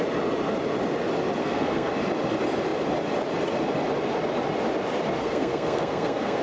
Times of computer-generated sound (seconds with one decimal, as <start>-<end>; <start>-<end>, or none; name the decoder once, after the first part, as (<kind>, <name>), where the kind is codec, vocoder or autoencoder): 1.4-1.9 (codec, SNAC); 5.2-6.4